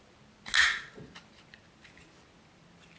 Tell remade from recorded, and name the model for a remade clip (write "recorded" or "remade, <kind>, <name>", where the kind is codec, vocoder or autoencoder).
recorded